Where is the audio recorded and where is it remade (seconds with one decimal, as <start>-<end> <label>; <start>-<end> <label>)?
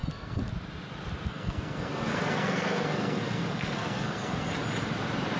0.0-0.5 remade; 0.5-1.3 recorded; 1.3-4.5 remade; 4.5-5.4 recorded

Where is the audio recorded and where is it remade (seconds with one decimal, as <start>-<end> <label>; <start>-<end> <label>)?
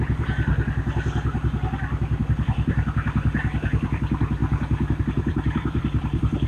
0.0-0.5 remade; 0.5-2.2 recorded; 2.2-4.4 remade; 4.4-5.0 recorded; 5.0-6.5 remade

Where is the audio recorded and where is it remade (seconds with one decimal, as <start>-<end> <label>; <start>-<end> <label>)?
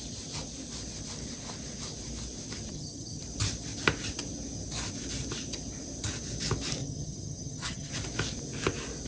0.0-2.7 recorded; 2.7-3.2 remade; 3.2-6.8 recorded; 6.8-7.9 remade; 7.9-9.1 recorded